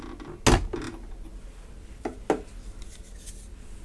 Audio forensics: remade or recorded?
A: recorded